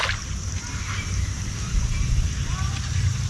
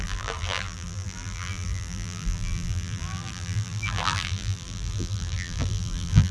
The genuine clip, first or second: first